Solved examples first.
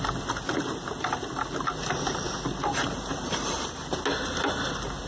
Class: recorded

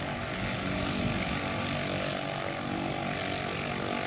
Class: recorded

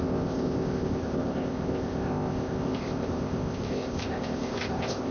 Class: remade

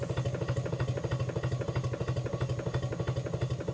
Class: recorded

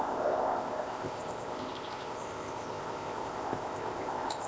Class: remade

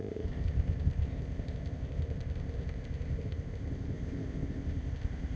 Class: remade